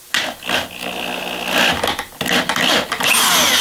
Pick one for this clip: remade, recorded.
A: recorded